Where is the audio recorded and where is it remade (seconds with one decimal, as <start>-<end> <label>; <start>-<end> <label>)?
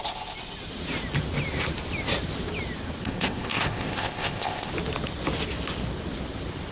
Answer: 0.0-3.0 recorded; 3.0-4.7 remade; 4.7-6.7 recorded